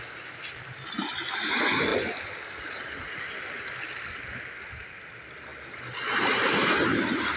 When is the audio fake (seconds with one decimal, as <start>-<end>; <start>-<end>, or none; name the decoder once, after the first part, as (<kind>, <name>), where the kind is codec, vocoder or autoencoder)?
none